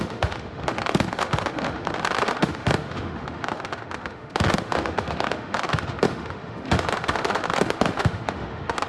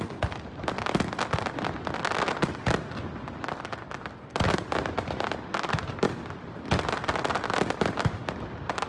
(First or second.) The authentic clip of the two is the second